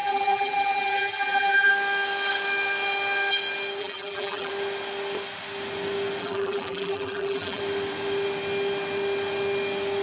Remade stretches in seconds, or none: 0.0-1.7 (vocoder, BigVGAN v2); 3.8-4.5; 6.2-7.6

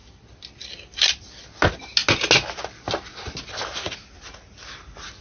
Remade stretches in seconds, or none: none

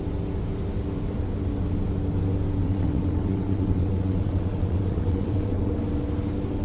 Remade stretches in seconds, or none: 2.6-5.7 (vocoder, WaveNeXt)